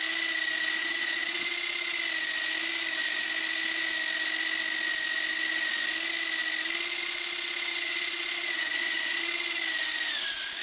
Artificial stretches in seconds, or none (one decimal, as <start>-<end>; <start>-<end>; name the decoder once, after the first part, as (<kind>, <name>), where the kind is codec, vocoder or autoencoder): 0.8-1.5 (vocoder, Vocos); 7.7-9.2